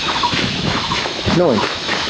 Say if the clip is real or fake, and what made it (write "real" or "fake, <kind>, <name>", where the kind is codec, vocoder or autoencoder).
fake, autoencoder, DAC-VAE